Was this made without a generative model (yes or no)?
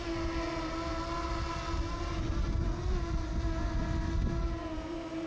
yes